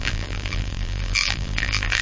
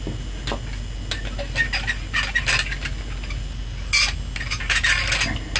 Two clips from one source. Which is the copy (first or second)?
first